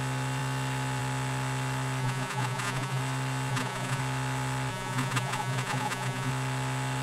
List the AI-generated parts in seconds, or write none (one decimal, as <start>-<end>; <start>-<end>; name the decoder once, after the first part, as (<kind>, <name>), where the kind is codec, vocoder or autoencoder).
2.0-3.0 (vocoder, Vocos); 3.5-4.0; 4.7-6.3